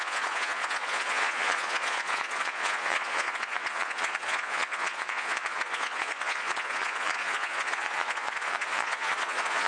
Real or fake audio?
fake